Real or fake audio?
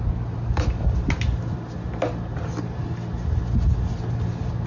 real